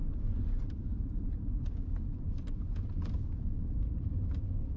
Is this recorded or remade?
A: remade